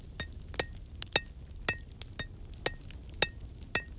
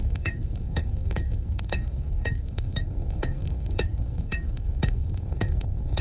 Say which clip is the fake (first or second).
second